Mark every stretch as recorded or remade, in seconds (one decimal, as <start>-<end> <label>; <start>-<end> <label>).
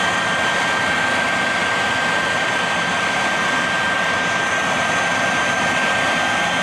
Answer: 0.0-6.6 recorded